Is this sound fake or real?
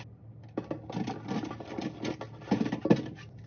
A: real